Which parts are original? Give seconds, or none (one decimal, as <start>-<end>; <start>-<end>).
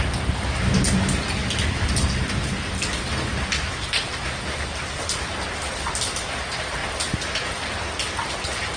0.0-8.8